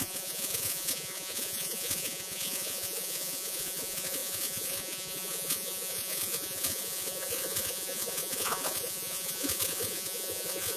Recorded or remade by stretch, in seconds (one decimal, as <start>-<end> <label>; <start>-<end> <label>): 0.0-10.8 remade

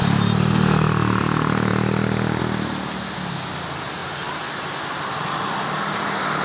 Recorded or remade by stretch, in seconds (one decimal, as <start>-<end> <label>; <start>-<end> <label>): 0.0-1.2 remade; 1.2-4.0 recorded; 4.0-4.7 remade; 4.7-6.4 recorded

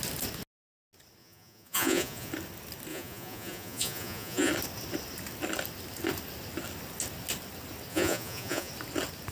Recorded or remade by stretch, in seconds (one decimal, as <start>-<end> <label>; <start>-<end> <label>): 0.0-1.2 recorded; 1.2-2.3 remade; 2.3-2.9 recorded; 2.9-4.5 remade; 4.5-7.9 recorded; 7.9-8.7 remade; 8.7-9.3 recorded

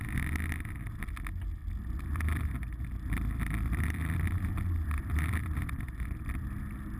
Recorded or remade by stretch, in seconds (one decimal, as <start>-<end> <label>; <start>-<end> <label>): 0.0-1.6 recorded; 1.6-5.8 remade; 5.8-7.0 recorded

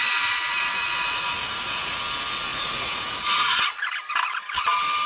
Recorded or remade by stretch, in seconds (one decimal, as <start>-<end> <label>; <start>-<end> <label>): 0.0-2.0 remade; 2.0-2.5 recorded; 2.5-3.9 remade; 3.9-5.1 recorded